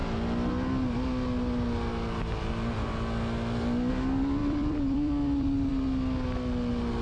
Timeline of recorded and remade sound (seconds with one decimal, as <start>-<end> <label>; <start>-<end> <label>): 0.0-4.4 recorded; 4.4-5.7 remade; 5.7-7.0 recorded